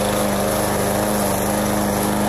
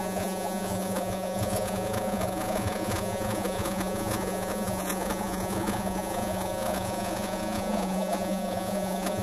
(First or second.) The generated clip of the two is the second